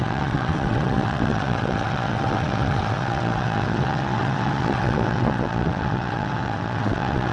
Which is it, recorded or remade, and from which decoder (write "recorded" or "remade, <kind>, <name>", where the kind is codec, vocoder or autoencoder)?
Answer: remade, vocoder, WaveNeXt